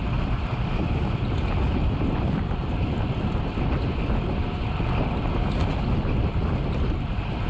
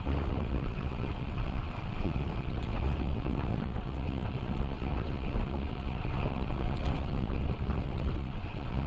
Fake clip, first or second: second